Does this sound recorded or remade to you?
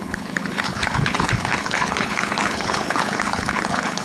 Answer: remade